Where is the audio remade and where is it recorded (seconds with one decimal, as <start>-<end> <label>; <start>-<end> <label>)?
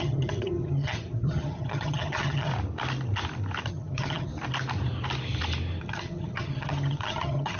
0.0-2.5 remade; 2.5-3.7 recorded; 3.7-4.3 remade; 4.3-5.8 recorded; 5.8-7.6 remade